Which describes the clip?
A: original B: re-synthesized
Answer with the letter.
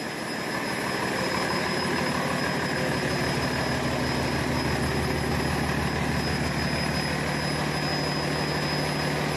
A